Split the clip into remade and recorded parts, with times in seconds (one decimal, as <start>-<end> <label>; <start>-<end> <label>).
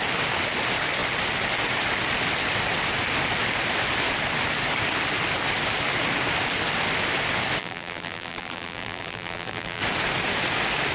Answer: 0.0-7.6 recorded; 7.6-9.8 remade; 9.8-10.9 recorded